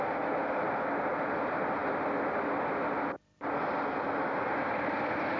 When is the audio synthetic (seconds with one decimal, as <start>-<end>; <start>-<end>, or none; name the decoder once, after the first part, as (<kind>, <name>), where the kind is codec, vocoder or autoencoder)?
none